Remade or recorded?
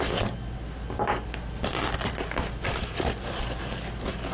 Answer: recorded